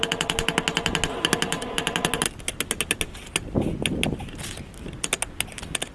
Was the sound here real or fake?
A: real